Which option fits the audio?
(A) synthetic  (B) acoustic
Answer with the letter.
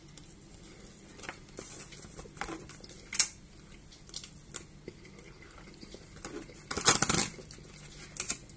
B